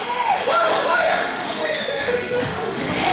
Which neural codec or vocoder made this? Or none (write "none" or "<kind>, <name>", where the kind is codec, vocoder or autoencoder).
autoencoder, DAC-VAE